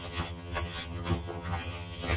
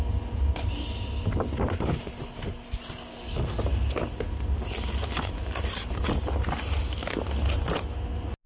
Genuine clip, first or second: second